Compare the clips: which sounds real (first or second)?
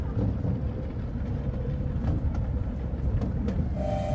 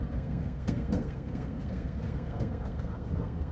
first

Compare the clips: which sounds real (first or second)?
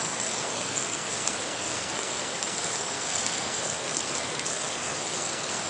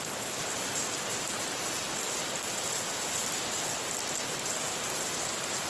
second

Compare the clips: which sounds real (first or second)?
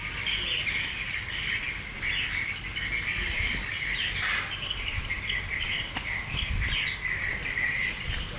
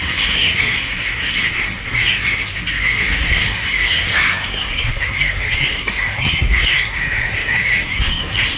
first